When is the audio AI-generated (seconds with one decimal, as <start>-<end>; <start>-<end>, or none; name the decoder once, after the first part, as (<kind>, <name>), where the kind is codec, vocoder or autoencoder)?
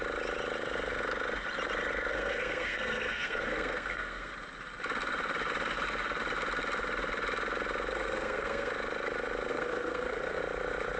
2.1-4.3 (codec, SNAC); 7.9-8.7; 9.5-10.4